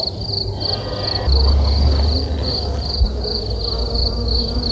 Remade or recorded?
recorded